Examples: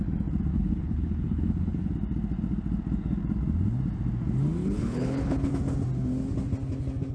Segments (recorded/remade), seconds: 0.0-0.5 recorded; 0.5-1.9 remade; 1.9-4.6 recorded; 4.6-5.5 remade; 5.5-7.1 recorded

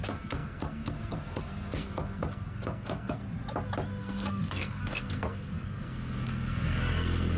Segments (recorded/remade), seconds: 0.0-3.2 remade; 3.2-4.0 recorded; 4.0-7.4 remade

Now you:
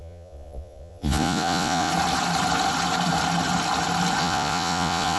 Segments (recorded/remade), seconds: 0.0-1.9 remade; 1.9-4.2 recorded; 4.2-5.2 remade

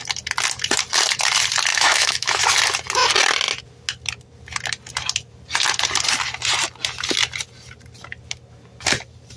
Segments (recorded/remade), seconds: 0.0-1.7 recorded; 1.7-2.4 remade; 2.4-9.4 recorded